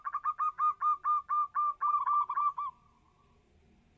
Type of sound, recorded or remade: recorded